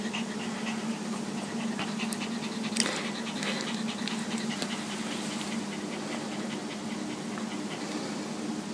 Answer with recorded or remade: recorded